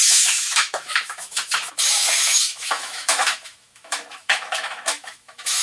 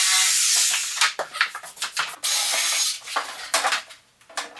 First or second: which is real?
second